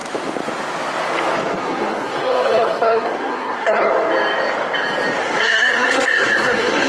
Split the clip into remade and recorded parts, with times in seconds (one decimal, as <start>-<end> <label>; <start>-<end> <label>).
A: 0.0-1.6 recorded; 1.6-3.9 remade; 3.9-5.2 recorded; 5.2-6.9 remade